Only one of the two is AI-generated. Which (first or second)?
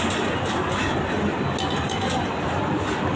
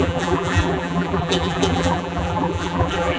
second